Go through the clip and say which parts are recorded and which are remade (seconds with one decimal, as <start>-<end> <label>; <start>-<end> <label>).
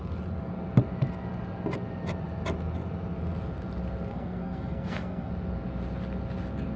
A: 0.0-4.1 recorded; 4.1-5.3 remade; 5.3-6.8 recorded